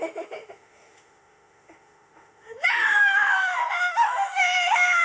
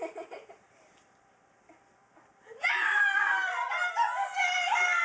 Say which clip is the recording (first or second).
second